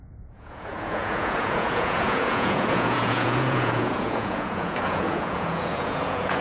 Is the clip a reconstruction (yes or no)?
yes